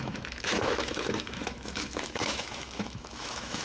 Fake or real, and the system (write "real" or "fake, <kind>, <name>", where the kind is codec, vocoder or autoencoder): fake, autoencoder, DAC-VAE